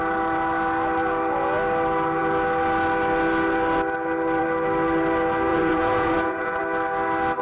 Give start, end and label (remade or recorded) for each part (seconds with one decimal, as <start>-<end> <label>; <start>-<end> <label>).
0.0-5.5 recorded; 5.5-6.6 remade; 6.6-7.4 recorded